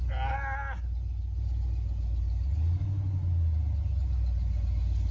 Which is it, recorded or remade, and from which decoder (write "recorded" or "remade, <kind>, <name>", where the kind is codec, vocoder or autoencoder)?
recorded